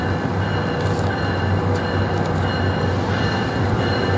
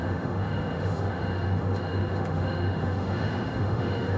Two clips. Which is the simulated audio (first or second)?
second